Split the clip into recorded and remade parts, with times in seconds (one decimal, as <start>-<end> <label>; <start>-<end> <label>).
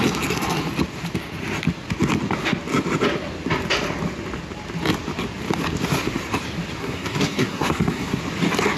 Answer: 0.0-6.8 recorded; 6.8-8.2 remade; 8.2-8.8 recorded